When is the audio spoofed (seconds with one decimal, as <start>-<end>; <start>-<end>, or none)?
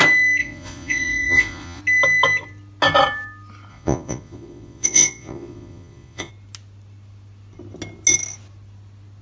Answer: 0.4-1.8; 3.7-6.3